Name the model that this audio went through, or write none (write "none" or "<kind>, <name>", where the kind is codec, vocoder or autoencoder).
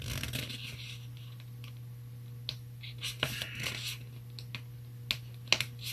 none